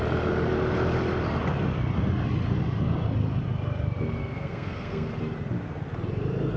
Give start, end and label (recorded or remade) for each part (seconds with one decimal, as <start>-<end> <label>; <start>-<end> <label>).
0.0-4.2 recorded; 4.2-5.1 remade; 5.1-6.6 recorded